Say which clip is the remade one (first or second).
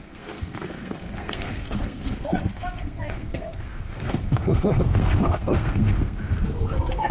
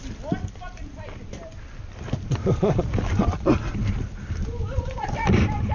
first